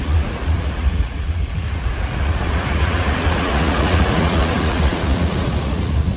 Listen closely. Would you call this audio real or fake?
fake